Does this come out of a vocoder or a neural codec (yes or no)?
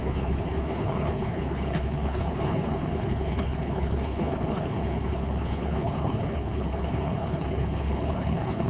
yes